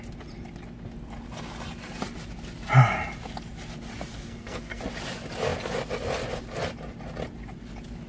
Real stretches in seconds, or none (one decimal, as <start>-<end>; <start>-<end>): 0.0-4.1; 4.8-8.1